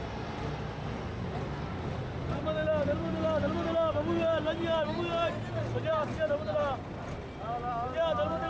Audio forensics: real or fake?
real